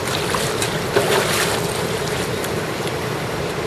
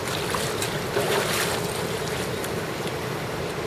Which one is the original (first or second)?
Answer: second